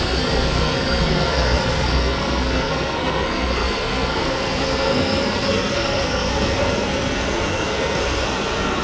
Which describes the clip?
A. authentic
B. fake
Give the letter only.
B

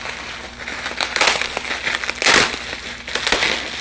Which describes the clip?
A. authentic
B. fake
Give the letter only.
A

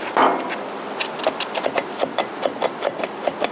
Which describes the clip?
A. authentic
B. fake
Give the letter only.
A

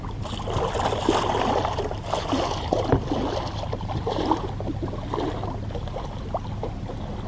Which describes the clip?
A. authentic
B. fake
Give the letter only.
A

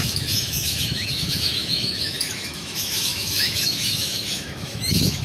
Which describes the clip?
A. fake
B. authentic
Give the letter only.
A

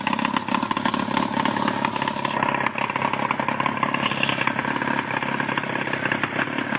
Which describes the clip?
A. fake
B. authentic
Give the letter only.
B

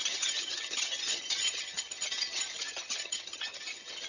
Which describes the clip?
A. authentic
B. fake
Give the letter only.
B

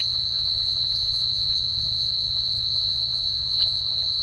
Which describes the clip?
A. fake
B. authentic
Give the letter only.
A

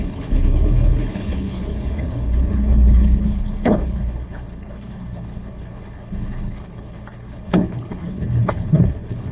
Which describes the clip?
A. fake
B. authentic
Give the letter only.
A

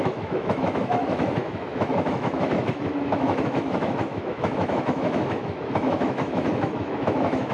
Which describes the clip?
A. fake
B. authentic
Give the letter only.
A